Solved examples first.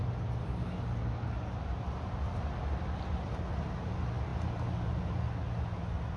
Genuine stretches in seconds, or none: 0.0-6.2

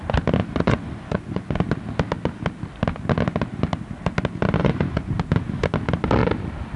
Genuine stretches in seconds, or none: 0.0-0.4; 1.6-4.6; 5.1-6.8